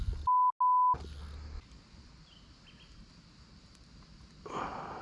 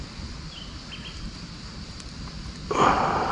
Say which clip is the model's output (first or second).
second